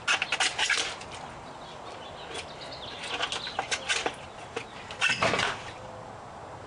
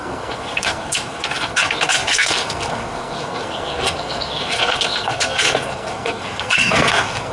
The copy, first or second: second